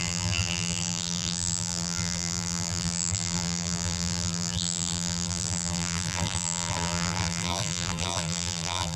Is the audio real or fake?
fake